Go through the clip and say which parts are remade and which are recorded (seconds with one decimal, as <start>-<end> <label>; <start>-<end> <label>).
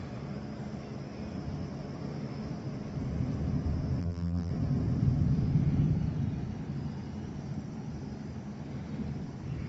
0.0-4.0 recorded; 4.0-4.5 remade; 4.5-9.7 recorded